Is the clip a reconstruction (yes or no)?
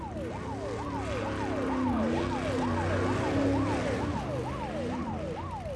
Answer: no